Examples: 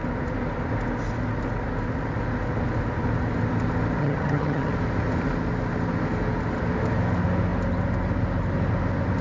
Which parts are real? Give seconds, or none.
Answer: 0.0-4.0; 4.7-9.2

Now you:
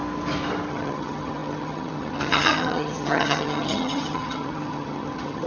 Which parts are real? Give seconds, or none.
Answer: 0.0-0.7

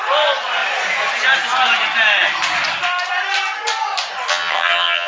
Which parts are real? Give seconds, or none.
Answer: 0.0-4.3